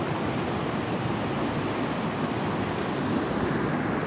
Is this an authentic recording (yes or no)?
yes